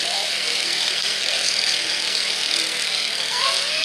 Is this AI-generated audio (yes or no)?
yes